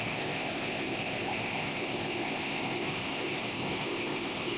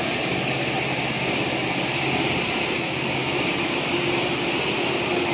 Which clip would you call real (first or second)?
second